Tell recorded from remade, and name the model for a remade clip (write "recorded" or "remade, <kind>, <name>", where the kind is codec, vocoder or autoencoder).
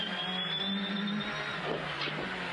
recorded